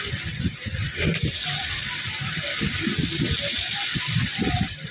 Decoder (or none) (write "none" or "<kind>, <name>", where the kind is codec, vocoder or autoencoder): none